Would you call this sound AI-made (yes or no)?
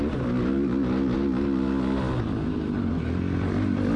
no